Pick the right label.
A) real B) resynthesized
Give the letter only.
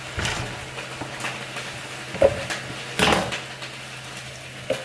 A